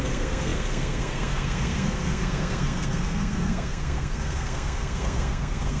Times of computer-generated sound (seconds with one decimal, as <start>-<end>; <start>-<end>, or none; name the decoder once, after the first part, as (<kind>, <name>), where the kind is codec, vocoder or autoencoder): 0.0-5.8 (codec, SNAC)